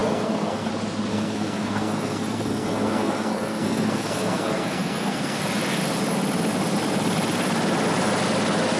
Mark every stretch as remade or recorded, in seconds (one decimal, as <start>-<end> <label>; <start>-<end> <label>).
0.0-0.7 remade; 0.7-1.1 recorded; 1.1-5.4 remade; 5.4-8.8 recorded